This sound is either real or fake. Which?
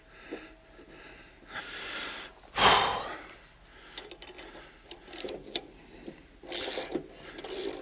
real